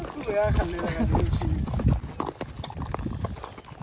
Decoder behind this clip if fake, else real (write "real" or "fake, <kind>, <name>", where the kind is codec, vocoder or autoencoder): real